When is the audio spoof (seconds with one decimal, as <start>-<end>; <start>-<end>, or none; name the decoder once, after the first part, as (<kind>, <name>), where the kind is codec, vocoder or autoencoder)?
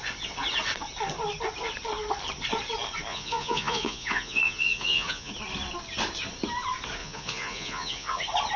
3.1-5.3 (vocoder, Vocos); 7.0-8.2